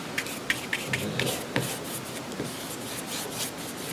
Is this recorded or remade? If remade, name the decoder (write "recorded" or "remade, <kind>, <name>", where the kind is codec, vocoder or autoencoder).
recorded